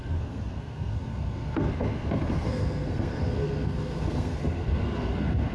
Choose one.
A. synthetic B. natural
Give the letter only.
A